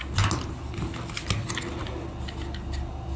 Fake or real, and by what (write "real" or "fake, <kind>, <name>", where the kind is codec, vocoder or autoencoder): real